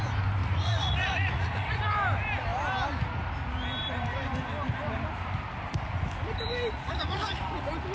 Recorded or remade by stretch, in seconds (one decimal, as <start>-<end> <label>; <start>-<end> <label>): 0.0-0.4 recorded; 0.4-1.8 remade; 1.8-6.7 recorded; 6.7-7.4 remade; 7.4-7.9 recorded